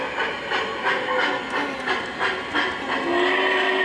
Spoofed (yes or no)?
no